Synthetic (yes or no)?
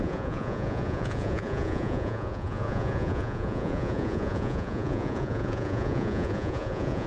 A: yes